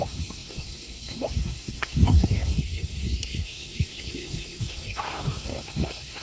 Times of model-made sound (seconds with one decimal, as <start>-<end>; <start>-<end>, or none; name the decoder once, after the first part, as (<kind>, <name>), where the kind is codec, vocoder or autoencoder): 0.0-6.2 (codec, SNAC)